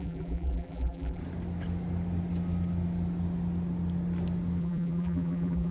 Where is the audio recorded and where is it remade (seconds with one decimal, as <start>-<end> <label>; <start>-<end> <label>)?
0.0-1.2 remade; 1.2-4.6 recorded; 4.6-5.7 remade